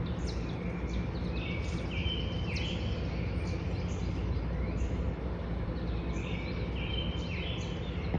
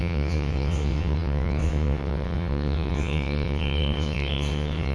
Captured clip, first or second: first